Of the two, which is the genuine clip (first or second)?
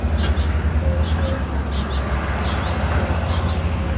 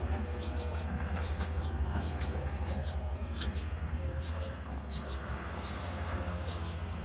first